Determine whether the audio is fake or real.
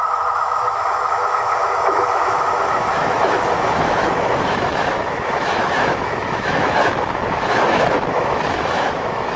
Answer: fake